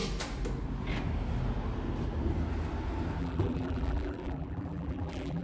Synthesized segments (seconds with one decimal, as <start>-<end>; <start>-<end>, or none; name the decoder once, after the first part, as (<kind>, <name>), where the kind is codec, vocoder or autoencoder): 3.2-5.4 (vocoder, BigVGAN v2)